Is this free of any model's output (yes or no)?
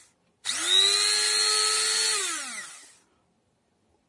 yes